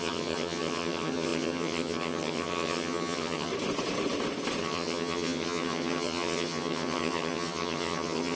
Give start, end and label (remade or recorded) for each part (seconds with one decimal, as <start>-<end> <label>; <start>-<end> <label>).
0.0-3.5 remade; 3.5-4.6 recorded; 4.6-8.3 remade